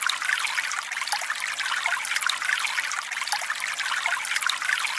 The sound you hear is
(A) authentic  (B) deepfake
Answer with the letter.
A